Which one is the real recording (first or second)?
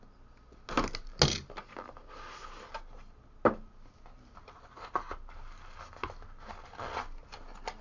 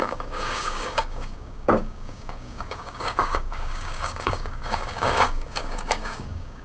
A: first